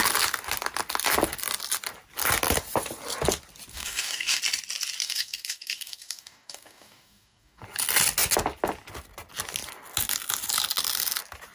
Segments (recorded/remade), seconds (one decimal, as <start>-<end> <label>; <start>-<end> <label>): 0.0-3.7 recorded; 3.7-4.4 remade; 4.4-5.0 recorded; 5.0-7.6 remade; 7.6-11.5 recorded